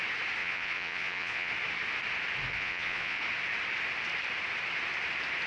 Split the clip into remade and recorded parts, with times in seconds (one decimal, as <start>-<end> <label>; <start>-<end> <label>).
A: 0.0-0.4 recorded; 0.4-1.5 remade; 1.5-2.5 recorded; 2.5-3.2 remade; 3.2-5.5 recorded